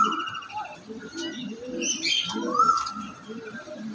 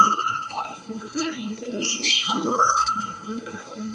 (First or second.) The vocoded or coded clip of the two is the second